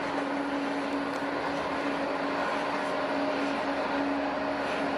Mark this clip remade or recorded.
recorded